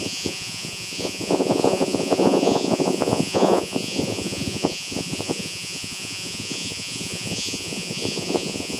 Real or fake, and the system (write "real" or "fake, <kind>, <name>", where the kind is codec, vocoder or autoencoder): fake, vocoder, Vocos